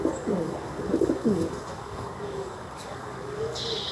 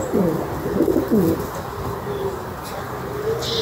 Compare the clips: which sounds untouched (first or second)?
second